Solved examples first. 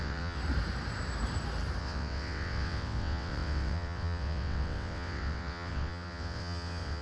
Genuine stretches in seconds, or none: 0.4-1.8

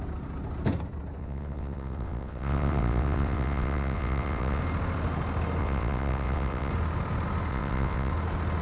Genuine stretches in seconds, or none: 0.0-1.2; 4.6-5.6; 6.7-7.5; 8.1-8.6

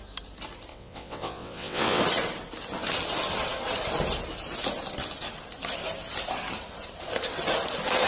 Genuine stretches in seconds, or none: 0.0-0.7; 2.0-8.1

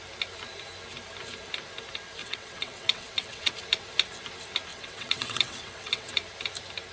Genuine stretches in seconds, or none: 0.0-2.2; 3.5-4.7; 6.1-6.9

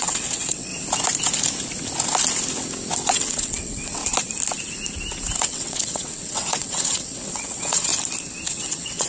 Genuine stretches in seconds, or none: 0.7-3.1; 4.0-5.4; 7.9-8.5

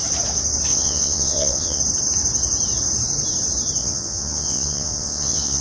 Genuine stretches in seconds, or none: 0.0-0.7; 1.8-3.8

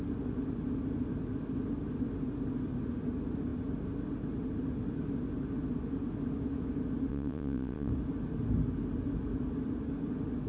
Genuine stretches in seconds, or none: 0.0-7.1; 7.9-10.5